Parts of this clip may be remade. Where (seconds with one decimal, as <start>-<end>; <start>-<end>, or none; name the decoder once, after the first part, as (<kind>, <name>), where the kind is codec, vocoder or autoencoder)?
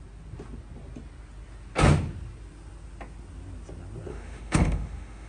4.1-5.3 (autoencoder, DAC-VAE)